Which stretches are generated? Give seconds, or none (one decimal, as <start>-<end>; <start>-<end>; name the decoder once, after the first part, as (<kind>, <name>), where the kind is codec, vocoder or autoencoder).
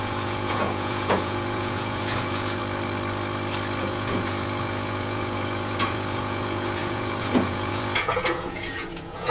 0.0-2.6 (vocoder, Vocos); 3.8-9.3